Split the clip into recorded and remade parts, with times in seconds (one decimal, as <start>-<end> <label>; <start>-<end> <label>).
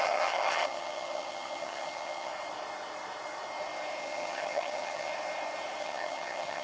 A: 0.0-2.3 remade; 2.3-4.0 recorded; 4.0-5.1 remade; 5.1-5.8 recorded; 5.8-6.6 remade